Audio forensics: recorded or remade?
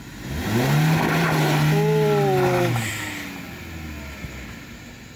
recorded